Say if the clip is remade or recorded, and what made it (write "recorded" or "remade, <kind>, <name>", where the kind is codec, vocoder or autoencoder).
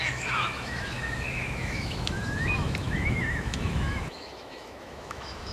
remade, autoencoder, DAC-VAE